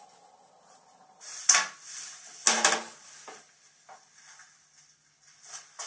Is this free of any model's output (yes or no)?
yes